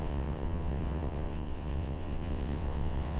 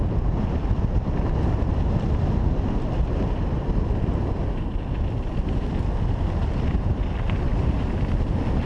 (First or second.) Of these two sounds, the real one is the second